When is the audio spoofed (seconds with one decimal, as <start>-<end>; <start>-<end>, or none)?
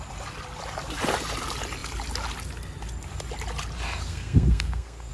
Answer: 4.1-5.1